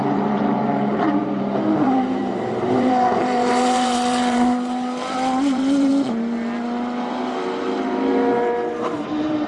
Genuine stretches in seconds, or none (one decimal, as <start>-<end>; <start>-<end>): 5.9-8.8